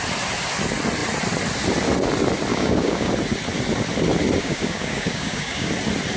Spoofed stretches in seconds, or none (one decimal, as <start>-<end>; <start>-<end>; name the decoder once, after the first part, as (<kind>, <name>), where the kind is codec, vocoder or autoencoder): 2.5-3.1 (codec, DAC); 4.4-5.7